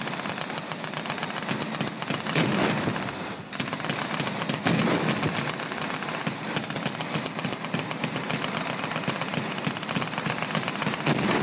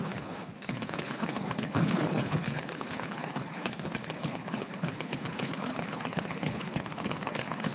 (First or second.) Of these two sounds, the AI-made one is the second